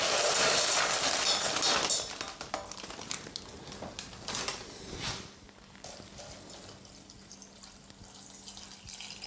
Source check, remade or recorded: recorded